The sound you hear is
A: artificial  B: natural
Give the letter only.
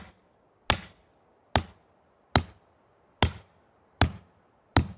B